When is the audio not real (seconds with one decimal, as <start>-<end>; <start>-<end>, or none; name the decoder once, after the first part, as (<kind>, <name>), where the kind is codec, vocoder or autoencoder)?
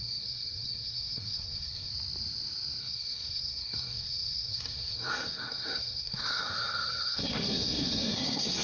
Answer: 0.0-1.9 (codec, SNAC); 2.8-8.6